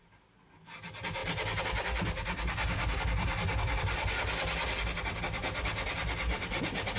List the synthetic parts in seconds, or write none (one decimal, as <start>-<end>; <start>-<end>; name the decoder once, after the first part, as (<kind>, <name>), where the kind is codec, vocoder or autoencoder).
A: none